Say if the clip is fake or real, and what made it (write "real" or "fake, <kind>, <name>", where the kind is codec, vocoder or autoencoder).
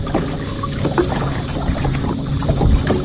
real